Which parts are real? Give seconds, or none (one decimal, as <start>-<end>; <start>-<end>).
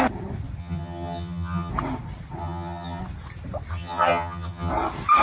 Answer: 0.0-0.6; 1.7-2.4; 3.0-3.7; 4.7-5.2